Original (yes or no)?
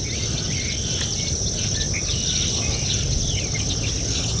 yes